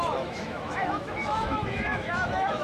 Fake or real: fake